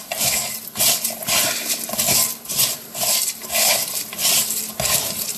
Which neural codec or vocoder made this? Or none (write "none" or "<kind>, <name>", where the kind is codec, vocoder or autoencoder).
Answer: none